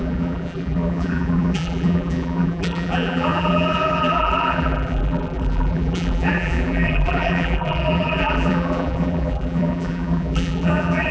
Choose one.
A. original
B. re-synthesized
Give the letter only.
B